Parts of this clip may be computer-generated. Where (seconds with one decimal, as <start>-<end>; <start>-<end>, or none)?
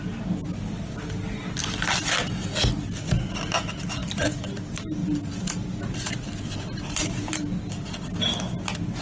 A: 4.0-4.6; 5.0-7.3